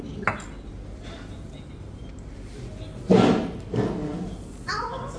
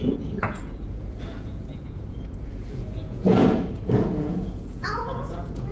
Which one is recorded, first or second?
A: first